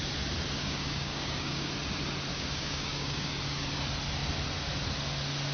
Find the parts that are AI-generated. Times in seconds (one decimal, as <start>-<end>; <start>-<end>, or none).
0.6-1.7; 2.3-3.3